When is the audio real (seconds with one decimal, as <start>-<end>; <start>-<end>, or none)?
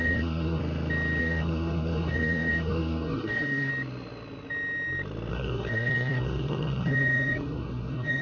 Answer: 0.6-1.2; 3.7-5.3